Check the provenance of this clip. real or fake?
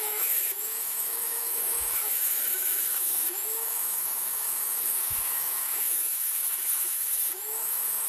fake